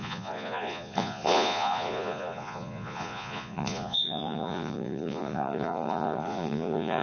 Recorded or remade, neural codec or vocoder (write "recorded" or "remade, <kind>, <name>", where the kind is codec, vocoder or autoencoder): remade, vocoder, Vocos